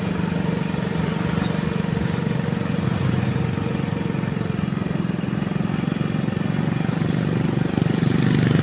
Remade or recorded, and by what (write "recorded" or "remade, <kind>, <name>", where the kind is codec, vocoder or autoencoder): recorded